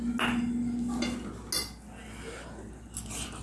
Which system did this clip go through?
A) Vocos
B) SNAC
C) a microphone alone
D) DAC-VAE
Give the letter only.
C